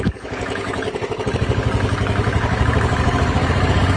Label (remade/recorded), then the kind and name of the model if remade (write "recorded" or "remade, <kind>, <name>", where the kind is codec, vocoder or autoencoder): remade, codec, DAC